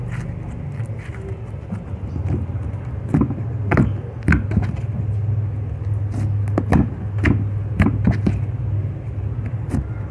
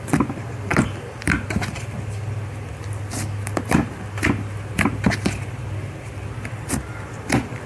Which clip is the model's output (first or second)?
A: second